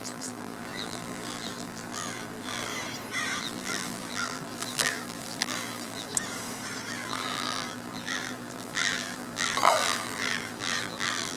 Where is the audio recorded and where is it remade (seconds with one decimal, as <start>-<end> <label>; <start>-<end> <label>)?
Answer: 0.0-2.7 remade; 2.7-3.4 recorded; 3.4-6.1 remade; 6.1-6.9 recorded; 6.9-11.4 remade